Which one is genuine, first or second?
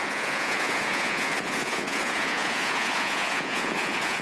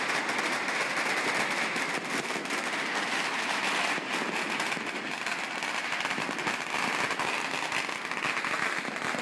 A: second